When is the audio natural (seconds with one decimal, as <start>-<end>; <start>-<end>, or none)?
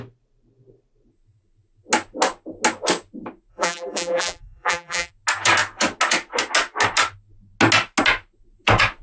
0.0-3.5; 5.1-9.0